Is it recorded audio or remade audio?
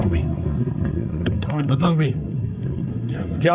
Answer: remade